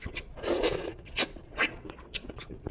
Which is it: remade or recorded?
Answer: remade